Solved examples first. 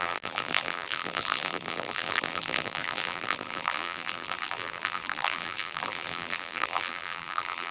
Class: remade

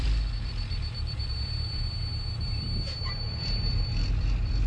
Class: remade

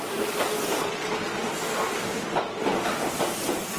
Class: recorded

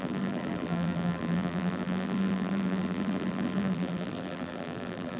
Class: remade